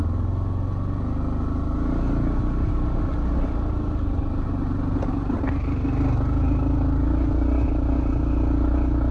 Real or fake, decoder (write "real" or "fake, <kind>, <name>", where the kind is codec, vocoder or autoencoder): real